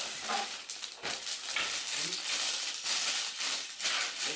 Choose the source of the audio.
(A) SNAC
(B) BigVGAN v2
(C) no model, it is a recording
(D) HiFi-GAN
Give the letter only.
B